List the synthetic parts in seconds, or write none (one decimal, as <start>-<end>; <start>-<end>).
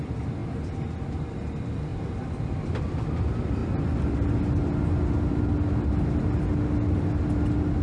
none